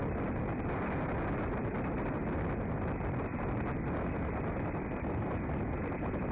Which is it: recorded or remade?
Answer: recorded